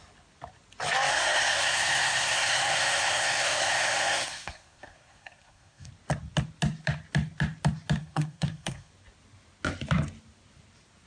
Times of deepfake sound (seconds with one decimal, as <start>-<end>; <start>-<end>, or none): 1.1-5.9; 8.0-8.9